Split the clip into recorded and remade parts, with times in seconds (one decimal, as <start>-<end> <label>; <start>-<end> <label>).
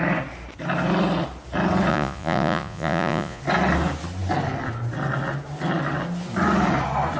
0.0-1.9 recorded; 1.9-3.4 remade; 3.4-7.2 recorded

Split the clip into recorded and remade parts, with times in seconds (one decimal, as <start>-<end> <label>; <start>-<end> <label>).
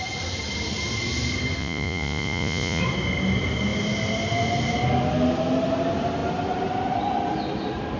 0.0-1.6 recorded; 1.6-2.8 remade; 2.8-8.0 recorded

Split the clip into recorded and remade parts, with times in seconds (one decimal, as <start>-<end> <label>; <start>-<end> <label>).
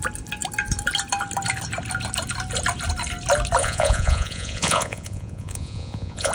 0.0-3.6 recorded; 3.6-6.3 remade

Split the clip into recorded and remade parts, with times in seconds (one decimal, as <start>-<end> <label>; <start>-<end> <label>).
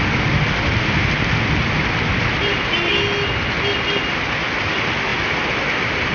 0.0-6.1 recorded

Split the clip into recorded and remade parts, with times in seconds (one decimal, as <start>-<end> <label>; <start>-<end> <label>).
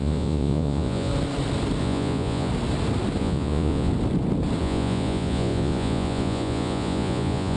0.0-1.1 remade; 1.1-1.8 recorded; 1.8-2.5 remade; 2.5-3.2 recorded; 3.2-3.9 remade; 3.9-4.6 recorded; 4.6-7.6 remade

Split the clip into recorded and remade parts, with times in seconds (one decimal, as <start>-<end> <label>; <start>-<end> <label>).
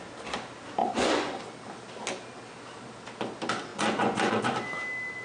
0.0-0.8 recorded; 0.8-1.4 remade; 1.4-3.7 recorded; 3.7-4.4 remade; 4.4-5.2 recorded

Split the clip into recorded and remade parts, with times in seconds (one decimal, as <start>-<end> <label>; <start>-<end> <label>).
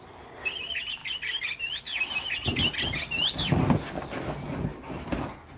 0.0-5.6 recorded